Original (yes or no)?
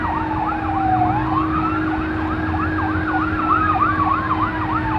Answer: yes